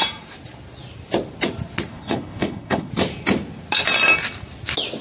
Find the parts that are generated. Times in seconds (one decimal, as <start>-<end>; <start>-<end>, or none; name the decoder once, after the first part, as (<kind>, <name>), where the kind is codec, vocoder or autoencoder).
1.9-2.9 (codec, HILCodec)

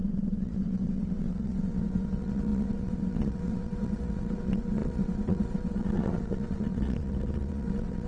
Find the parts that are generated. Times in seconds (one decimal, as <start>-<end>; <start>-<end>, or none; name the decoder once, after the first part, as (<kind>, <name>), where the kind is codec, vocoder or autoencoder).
0.0-8.1 (vocoder, WaveNeXt)